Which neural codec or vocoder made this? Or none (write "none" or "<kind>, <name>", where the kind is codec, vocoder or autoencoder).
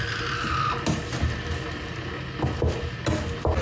none